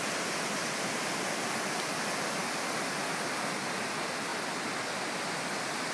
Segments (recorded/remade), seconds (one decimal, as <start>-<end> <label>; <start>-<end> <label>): 0.0-5.9 recorded